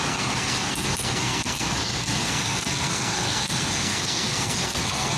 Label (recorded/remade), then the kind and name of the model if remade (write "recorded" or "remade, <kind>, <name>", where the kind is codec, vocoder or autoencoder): remade, codec, SNAC